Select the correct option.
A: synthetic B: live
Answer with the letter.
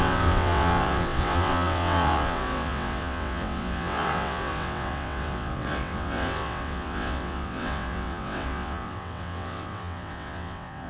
A